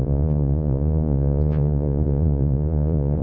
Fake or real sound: fake